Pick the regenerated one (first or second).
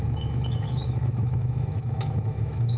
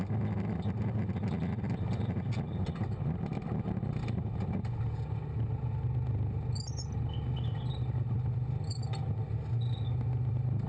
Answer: first